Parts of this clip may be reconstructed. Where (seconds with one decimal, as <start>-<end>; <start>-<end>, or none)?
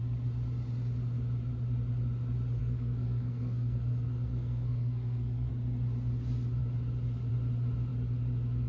2.6-5.5